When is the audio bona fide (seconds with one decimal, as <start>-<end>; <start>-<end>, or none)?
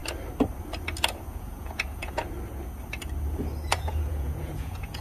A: 0.0-1.3; 2.2-3.7